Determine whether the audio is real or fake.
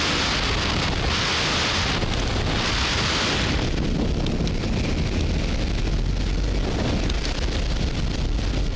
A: real